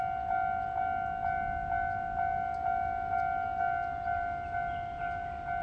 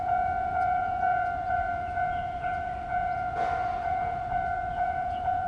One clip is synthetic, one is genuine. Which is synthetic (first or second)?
second